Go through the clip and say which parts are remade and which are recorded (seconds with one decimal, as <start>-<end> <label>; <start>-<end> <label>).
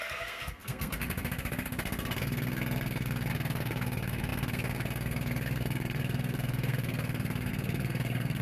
0.0-8.4 remade